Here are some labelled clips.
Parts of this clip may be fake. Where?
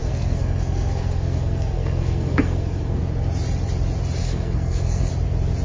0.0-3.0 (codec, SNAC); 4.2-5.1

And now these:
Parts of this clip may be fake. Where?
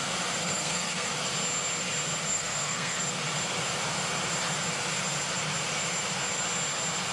0.4-1.1 (codec, SNAC); 2.3-3.0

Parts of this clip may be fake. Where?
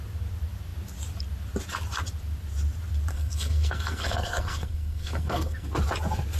3.1-5.7 (codec, SNAC)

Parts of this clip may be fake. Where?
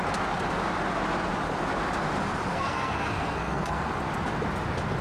2.5-3.9 (codec, SNAC)